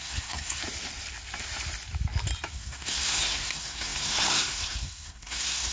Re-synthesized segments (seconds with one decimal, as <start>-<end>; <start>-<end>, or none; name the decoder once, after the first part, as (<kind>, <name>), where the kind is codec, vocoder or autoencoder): 0.0-0.6 (codec, SNAC); 2.5-5.7